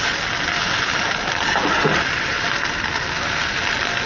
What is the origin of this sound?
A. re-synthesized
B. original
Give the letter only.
B